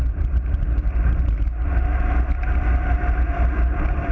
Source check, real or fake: real